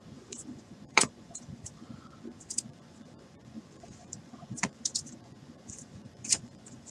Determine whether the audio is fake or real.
fake